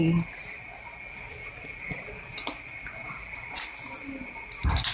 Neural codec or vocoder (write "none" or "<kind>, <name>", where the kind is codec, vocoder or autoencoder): none